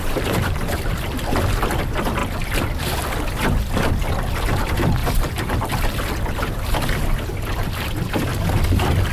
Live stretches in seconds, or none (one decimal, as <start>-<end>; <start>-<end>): 0.0-5.0; 5.7-9.1